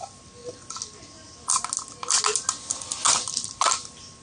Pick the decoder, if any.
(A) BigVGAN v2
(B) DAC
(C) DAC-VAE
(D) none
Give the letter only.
D